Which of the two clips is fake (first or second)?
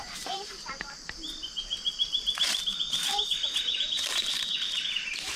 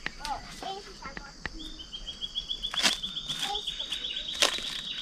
first